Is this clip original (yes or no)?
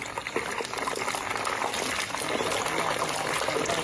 yes